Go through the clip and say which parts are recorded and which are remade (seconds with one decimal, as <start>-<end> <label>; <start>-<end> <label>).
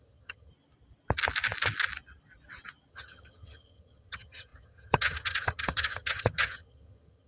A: 0.0-0.5 remade; 0.5-2.9 recorded; 2.9-7.3 remade